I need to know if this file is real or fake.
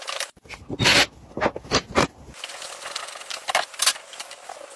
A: real